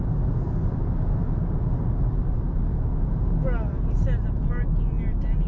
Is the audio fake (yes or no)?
no